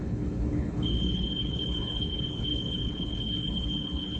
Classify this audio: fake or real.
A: fake